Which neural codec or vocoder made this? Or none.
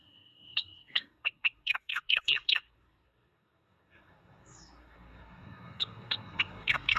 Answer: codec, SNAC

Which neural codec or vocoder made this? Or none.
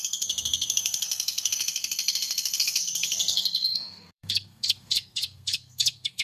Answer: codec, SNAC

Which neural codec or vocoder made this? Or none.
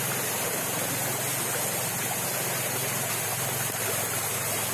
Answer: none